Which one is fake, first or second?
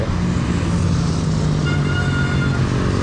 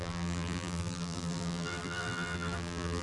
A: second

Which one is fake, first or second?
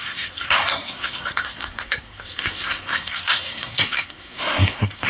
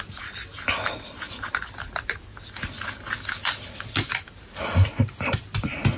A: first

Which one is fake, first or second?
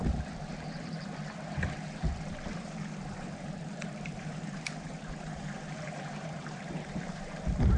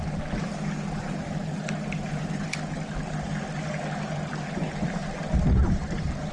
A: first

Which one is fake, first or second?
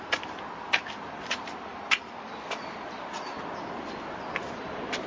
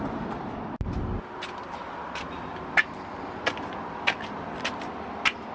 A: first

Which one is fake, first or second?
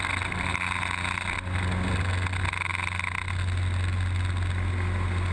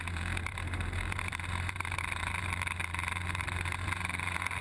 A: second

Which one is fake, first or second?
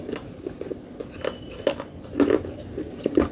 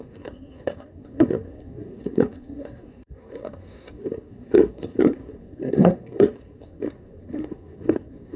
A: second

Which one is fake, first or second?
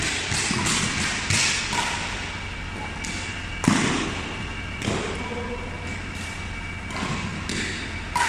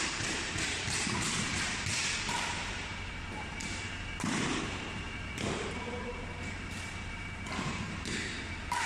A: second